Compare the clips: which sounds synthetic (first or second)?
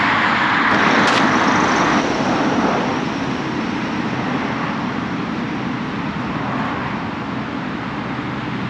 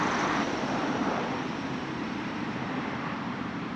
second